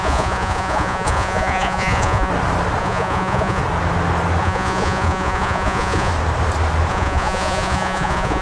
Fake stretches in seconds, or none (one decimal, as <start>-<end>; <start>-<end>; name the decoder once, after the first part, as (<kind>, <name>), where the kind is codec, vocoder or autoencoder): 0.0-2.3 (vocoder, Vocos); 2.8-3.6; 4.4-6.1; 6.9-8.4